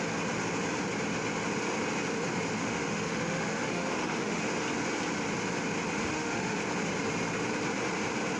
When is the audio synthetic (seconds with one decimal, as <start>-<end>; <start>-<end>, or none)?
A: 2.6-4.4; 6.1-6.6